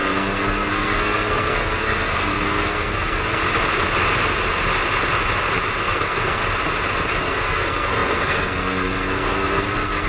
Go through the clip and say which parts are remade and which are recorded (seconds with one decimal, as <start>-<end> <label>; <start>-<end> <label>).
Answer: 0.0-3.4 remade; 3.4-5.8 recorded; 5.8-6.4 remade; 6.4-7.2 recorded; 7.2-10.1 remade